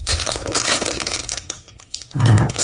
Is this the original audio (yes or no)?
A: no